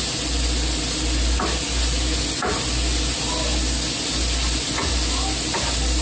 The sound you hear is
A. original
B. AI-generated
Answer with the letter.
A